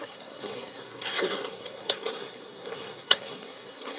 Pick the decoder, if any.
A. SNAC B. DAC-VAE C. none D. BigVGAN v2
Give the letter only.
A